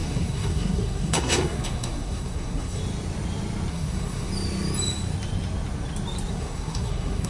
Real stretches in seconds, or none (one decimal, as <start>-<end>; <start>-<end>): 2.8-3.7; 4.3-6.3